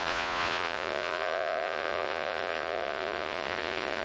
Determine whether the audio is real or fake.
fake